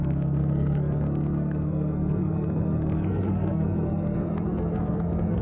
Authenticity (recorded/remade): remade